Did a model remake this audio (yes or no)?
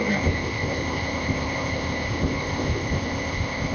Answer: yes